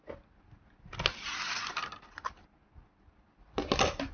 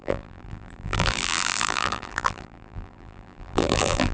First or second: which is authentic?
first